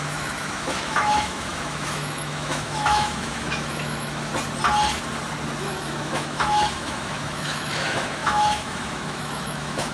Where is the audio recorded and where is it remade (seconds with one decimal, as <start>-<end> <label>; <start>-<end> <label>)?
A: 0.0-4.3 remade; 4.3-5.6 recorded; 5.6-9.9 remade